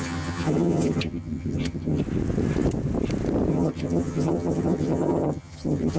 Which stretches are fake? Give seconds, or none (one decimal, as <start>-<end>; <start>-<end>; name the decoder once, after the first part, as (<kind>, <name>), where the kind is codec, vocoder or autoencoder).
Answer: 0.0-2.0 (vocoder, HiFi-GAN); 3.5-6.0